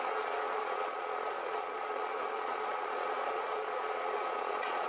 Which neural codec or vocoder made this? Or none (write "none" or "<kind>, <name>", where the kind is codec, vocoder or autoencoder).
vocoder, Vocos